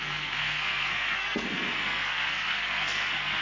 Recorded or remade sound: remade